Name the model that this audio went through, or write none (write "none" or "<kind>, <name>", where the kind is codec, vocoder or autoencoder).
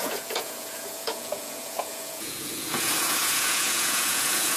vocoder, Vocos